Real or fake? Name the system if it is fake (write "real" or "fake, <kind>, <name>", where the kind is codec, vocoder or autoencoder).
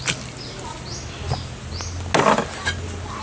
real